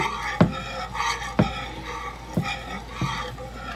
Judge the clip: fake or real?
real